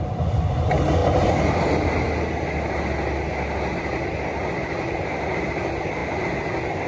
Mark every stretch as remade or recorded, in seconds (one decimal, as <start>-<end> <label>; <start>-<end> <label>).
0.0-6.9 recorded